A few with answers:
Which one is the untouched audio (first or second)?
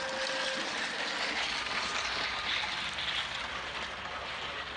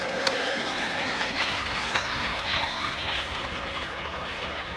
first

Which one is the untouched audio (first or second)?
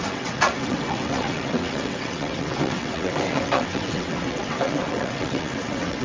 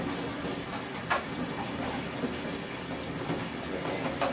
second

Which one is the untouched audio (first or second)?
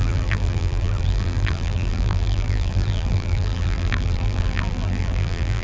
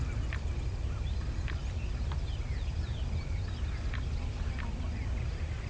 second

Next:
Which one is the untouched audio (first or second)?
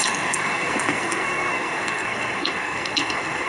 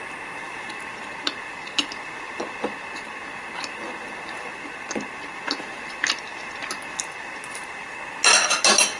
second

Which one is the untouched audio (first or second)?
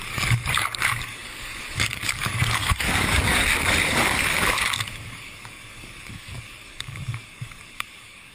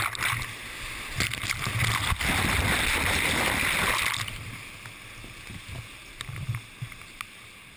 second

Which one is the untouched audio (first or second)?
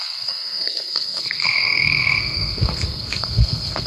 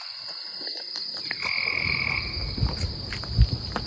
second